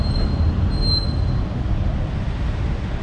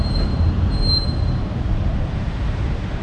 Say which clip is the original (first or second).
first